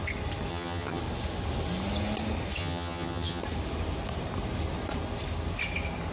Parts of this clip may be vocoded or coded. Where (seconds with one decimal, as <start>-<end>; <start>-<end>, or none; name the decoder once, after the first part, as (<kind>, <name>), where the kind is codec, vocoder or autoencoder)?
0.5-1.0 (vocoder, HiFi-GAN); 2.6-3.4